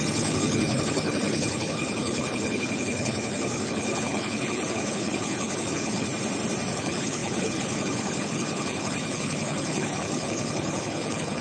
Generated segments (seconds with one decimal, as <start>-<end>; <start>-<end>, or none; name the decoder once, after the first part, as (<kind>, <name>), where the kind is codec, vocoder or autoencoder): 0.0-6.1 (codec, HILCodec); 6.7-11.4